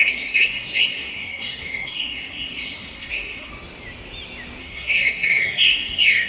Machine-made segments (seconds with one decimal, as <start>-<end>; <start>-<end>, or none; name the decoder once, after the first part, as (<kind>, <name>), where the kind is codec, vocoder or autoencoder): 0.0-3.5 (codec, SNAC); 4.6-6.3